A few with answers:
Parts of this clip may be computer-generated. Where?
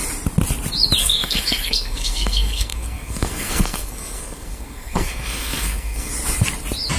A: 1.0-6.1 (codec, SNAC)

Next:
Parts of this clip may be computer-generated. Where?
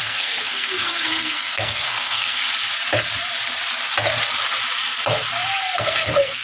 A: 0.0-2.4 (codec, SNAC); 5.6-6.4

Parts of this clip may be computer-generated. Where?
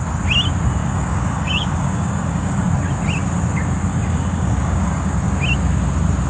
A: 0.8-2.7 (codec, DAC); 3.9-5.1